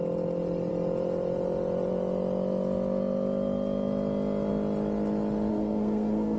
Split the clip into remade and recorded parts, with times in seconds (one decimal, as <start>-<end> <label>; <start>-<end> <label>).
0.0-5.5 recorded; 5.5-6.4 remade